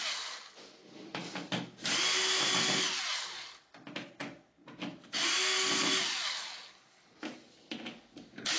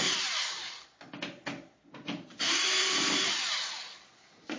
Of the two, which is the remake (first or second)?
second